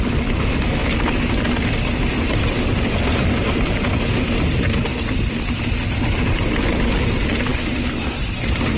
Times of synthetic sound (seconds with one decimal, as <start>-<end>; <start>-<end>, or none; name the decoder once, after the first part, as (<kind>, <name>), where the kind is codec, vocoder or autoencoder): none